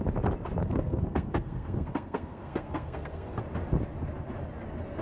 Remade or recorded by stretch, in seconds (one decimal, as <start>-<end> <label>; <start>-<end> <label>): 0.0-0.6 recorded; 0.6-3.4 remade; 3.4-5.0 recorded